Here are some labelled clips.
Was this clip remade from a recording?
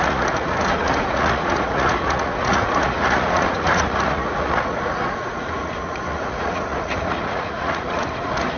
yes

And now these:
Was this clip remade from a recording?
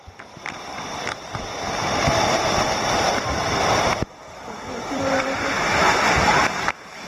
yes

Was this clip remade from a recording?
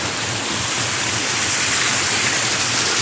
no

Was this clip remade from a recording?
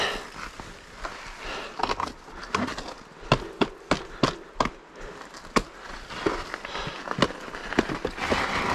no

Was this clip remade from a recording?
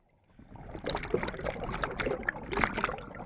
no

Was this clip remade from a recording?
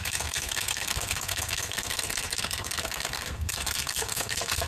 yes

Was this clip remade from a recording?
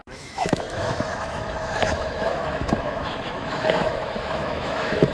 yes